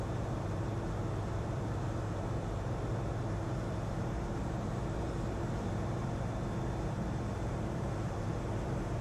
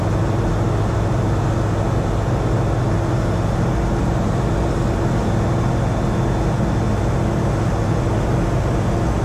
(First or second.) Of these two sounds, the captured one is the second